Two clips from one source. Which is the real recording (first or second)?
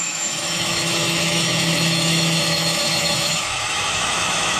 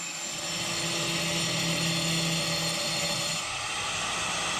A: second